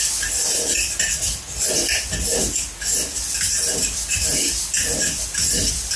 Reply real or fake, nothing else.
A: real